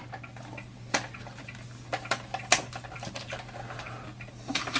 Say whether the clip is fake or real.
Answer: real